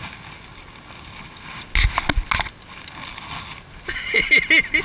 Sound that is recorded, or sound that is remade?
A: recorded